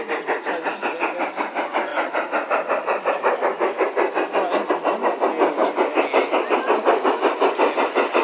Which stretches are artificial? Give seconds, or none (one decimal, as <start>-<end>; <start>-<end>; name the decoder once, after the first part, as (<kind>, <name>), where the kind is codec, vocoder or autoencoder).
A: none